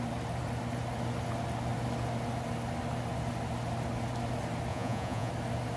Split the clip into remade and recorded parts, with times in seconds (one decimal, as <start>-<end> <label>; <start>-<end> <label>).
0.0-4.7 recorded; 4.7-5.3 remade; 5.3-5.8 recorded